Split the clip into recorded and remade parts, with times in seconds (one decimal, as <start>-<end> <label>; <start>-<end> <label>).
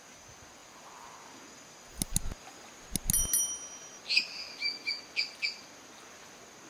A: 0.0-6.7 recorded